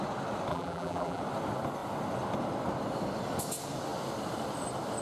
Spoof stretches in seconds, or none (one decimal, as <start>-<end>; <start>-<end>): 0.5-1.2